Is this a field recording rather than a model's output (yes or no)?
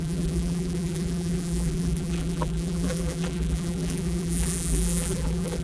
no